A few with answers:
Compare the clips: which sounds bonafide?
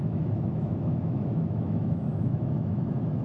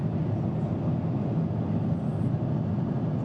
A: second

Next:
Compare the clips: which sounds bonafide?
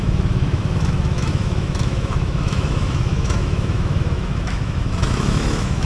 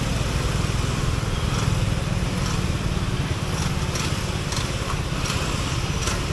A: second